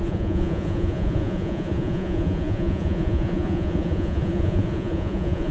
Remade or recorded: remade